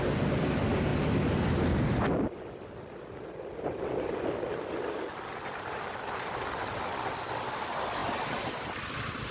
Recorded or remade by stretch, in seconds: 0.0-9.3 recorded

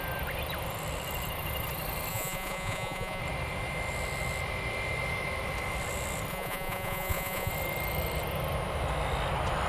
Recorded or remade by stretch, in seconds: 0.0-2.1 recorded; 2.1-3.2 remade; 3.2-6.3 recorded; 6.3-7.5 remade; 7.5-9.7 recorded

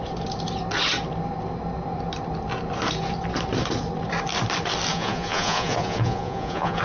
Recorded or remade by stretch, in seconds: 0.0-4.9 recorded; 4.9-6.8 remade

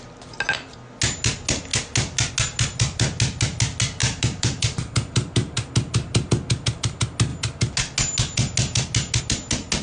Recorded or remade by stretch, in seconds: 0.0-4.0 recorded; 4.0-5.7 remade; 5.7-9.8 recorded

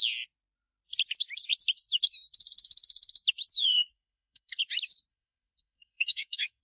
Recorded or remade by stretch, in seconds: 0.0-3.7 recorded; 3.7-4.5 remade; 4.5-5.1 recorded; 5.1-6.6 remade

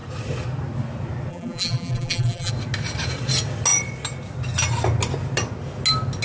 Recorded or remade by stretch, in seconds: 0.0-1.3 recorded; 1.3-2.5 remade; 2.5-6.2 recorded

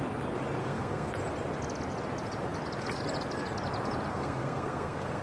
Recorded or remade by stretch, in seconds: 0.0-0.6 recorded; 0.6-1.1 remade; 1.1-4.1 recorded; 4.1-5.2 remade